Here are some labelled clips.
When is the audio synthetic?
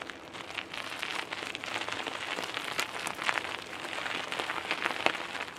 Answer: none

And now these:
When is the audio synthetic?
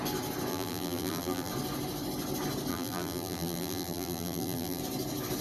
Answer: 0.5-1.5 (vocoder, BigVGAN v2); 2.7-4.8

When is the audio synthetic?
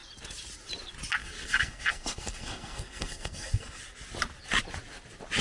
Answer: 1.2-3.8 (codec, SNAC)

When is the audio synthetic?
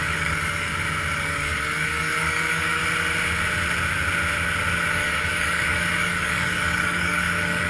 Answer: 0.0-0.7 (codec, DAC); 1.2-2.8; 4.9-7.7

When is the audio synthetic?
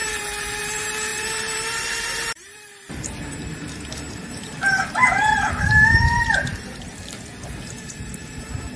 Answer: 0.0-8.8 (vocoder, BigVGAN v2)